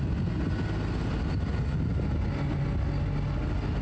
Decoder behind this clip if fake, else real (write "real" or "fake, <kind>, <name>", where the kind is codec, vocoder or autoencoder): real